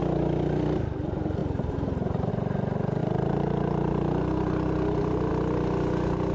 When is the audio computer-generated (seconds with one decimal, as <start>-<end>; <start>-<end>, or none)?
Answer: 1.4-2.3; 3.0-5.3